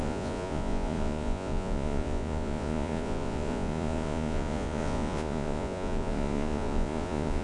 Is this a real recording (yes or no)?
no